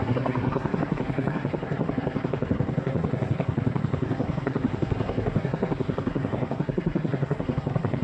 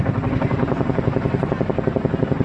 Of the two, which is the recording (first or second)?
second